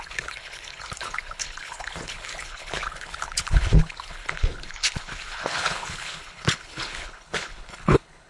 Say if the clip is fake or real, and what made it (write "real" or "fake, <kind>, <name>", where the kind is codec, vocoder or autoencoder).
fake, codec, HILCodec